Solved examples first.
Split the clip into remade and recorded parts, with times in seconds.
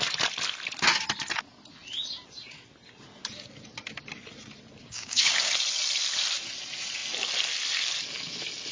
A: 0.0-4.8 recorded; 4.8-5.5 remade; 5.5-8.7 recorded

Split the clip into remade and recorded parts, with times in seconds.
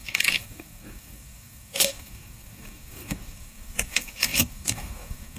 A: 0.0-5.4 remade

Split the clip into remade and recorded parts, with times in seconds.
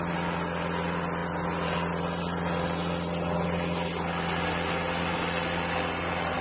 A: 0.0-6.4 recorded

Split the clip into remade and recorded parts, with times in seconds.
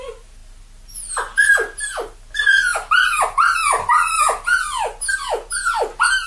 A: 0.0-6.3 recorded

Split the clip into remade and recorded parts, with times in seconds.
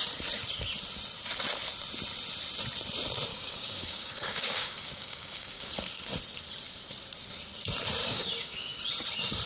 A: 0.0-3.3 recorded; 3.3-5.7 remade; 5.7-8.0 recorded; 8.0-8.8 remade; 8.8-9.5 recorded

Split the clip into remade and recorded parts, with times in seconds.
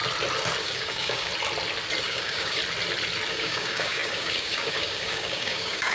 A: 0.0-0.6 recorded; 0.6-1.3 remade; 1.3-2.0 recorded; 2.0-2.6 remade; 2.6-3.3 recorded; 3.3-5.9 remade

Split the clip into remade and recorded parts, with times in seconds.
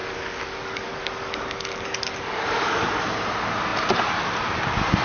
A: 0.0-3.0 remade; 3.0-5.0 recorded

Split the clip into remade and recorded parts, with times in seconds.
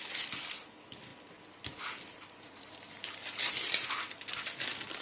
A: 0.0-5.0 recorded